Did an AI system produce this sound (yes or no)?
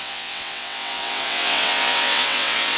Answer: yes